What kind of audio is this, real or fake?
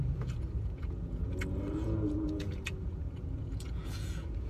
fake